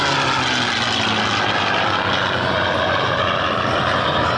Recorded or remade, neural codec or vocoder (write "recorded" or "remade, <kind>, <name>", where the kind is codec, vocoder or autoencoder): recorded